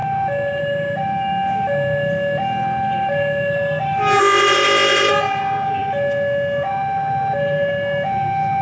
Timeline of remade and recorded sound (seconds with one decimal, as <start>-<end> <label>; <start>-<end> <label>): 0.0-4.2 recorded; 4.2-5.1 remade; 5.1-8.6 recorded